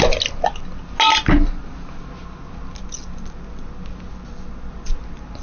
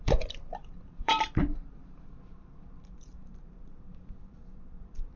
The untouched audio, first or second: first